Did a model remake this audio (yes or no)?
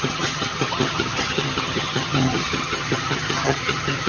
yes